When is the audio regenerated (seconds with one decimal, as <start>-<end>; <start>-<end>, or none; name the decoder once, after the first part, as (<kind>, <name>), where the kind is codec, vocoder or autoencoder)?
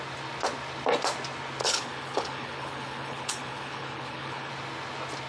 1.6-4.5 (codec, HILCodec)